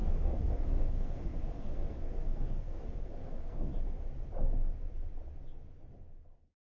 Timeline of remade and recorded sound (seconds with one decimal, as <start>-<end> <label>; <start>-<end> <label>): 0.0-3.7 remade; 3.7-6.6 recorded